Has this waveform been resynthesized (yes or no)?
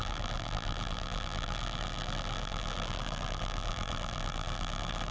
yes